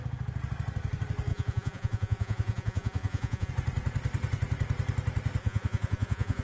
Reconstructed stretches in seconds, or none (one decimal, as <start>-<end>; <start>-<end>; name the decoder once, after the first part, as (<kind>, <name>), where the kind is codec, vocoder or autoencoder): 1.3-3.5 (vocoder, Vocos); 5.4-6.4